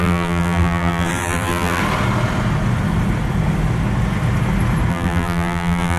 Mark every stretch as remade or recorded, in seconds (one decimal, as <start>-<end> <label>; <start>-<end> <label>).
0.0-1.8 remade; 1.8-4.9 recorded; 4.9-6.0 remade